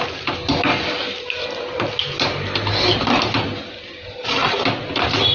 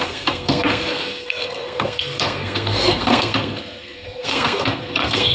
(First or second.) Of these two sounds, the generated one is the second